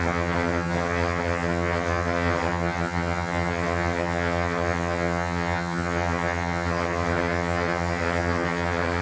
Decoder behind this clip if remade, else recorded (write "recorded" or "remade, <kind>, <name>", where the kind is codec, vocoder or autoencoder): remade, vocoder, HiFi-GAN